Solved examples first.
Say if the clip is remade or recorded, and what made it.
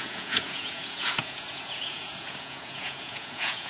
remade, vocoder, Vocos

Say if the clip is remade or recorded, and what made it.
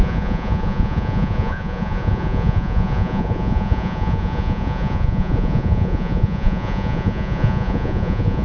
remade, vocoder, Vocos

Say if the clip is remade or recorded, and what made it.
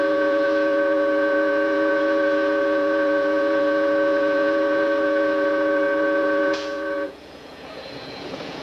remade, vocoder, Vocos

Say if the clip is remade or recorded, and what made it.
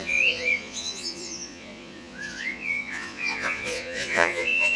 remade, vocoder, Vocos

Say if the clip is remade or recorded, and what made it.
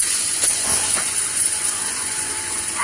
remade, vocoder, Vocos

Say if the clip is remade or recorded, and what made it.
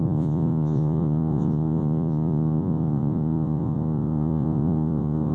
remade, vocoder, Vocos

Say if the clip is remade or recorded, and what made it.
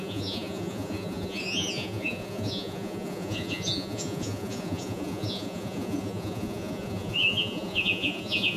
remade, vocoder, Vocos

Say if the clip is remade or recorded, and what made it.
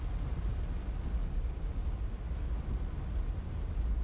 recorded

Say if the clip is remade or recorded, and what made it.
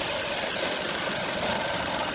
recorded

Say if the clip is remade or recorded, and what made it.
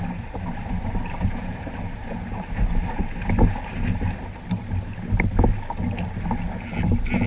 recorded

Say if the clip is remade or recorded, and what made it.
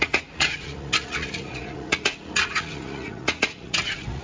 remade, vocoder, Vocos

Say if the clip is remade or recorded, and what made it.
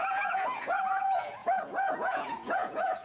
remade, vocoder, Vocos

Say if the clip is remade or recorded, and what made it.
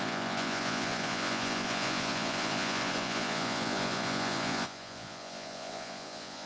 remade, vocoder, Vocos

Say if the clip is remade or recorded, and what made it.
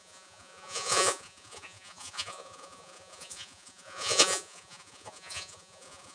remade, vocoder, Vocos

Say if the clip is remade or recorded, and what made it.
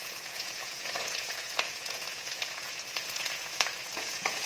remade, vocoder, Vocos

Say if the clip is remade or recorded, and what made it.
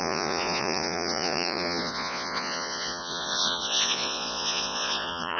remade, vocoder, Vocos